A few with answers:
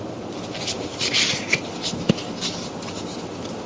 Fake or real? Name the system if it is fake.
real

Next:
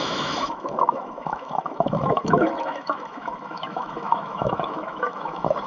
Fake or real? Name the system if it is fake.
fake, autoencoder, DAC-VAE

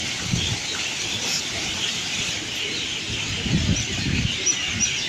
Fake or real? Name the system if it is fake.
fake, vocoder, BigVGAN v2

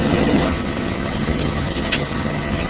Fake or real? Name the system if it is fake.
fake, vocoder, HiFi-GAN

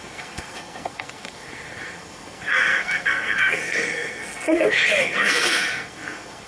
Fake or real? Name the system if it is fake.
fake, codec, SNAC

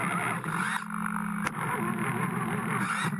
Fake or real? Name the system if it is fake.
real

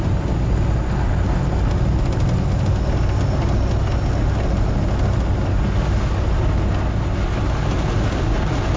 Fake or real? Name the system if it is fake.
real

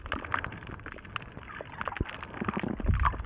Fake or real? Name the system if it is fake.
real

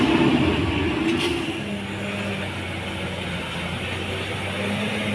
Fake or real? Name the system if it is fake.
real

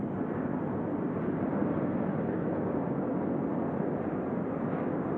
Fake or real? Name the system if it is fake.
real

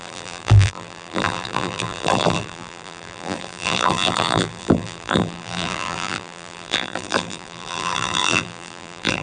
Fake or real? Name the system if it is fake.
fake, vocoder, BigVGAN v2